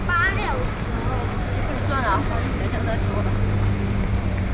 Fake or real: real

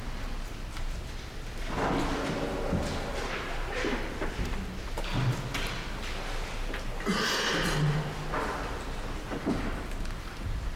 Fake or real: real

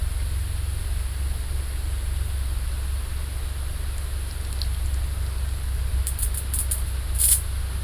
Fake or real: real